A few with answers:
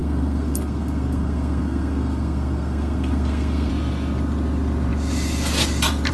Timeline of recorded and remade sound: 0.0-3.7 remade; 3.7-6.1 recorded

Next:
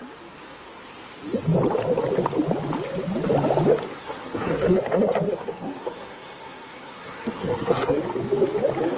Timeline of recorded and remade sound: 0.0-4.0 recorded; 4.0-8.0 remade; 8.0-9.0 recorded